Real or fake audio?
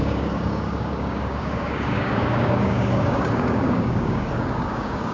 fake